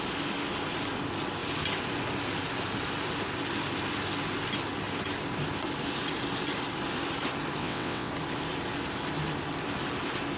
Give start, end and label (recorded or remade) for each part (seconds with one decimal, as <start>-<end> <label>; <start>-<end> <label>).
0.0-7.6 recorded; 7.6-8.1 remade; 8.1-10.4 recorded